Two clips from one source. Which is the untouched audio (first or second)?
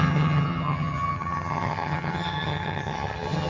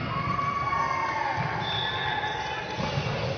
second